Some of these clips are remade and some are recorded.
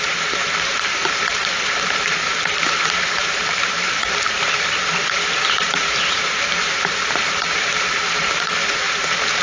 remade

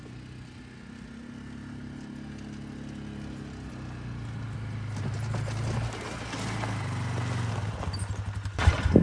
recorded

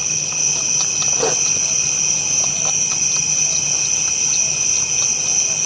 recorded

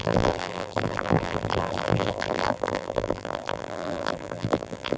remade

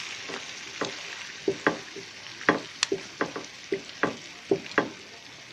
recorded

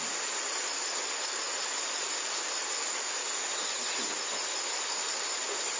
recorded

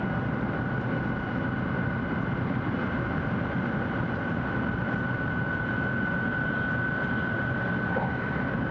remade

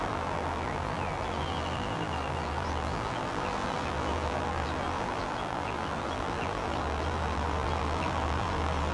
remade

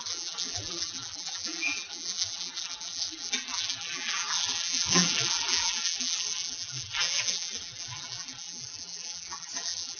remade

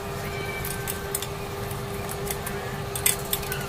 recorded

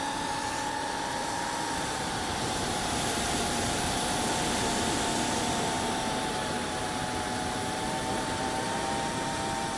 remade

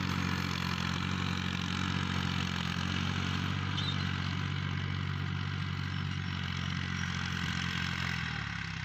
recorded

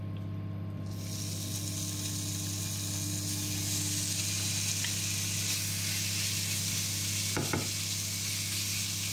recorded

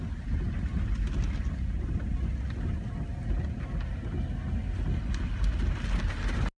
recorded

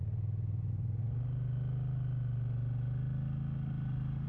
recorded